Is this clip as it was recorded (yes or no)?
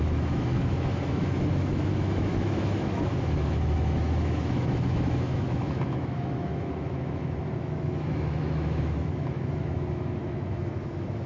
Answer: no